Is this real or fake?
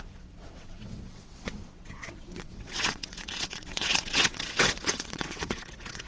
fake